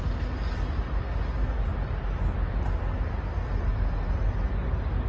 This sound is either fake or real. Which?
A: real